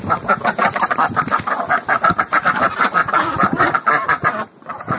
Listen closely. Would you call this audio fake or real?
real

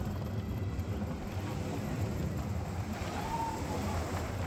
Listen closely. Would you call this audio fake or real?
real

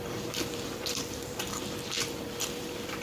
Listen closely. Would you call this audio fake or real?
fake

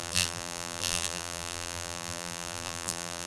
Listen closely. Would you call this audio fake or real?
fake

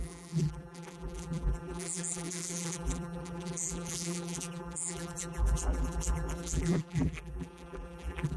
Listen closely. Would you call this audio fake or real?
fake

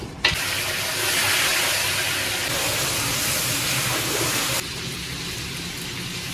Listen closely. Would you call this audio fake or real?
real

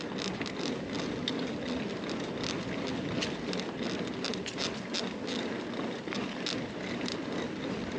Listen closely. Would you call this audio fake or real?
real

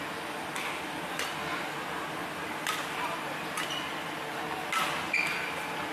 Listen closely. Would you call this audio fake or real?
real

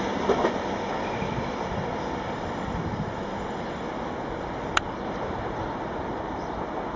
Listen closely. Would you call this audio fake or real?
fake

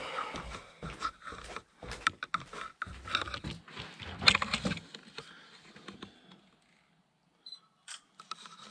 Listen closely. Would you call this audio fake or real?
real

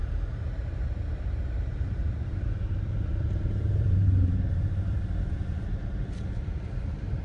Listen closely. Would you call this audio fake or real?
fake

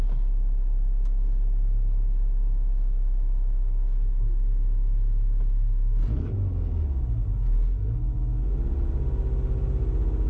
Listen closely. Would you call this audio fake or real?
real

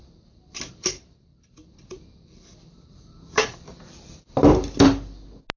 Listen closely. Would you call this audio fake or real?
real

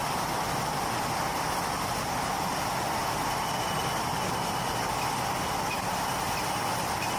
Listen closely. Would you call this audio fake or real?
real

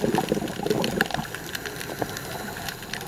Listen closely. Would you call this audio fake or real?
real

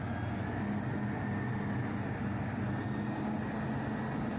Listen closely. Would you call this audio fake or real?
real